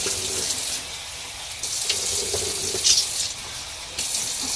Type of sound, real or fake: real